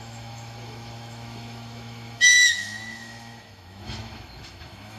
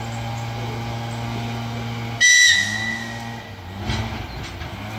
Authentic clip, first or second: second